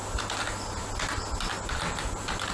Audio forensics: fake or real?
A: real